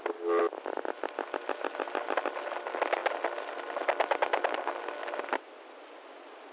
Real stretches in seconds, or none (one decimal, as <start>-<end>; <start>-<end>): 0.0-6.5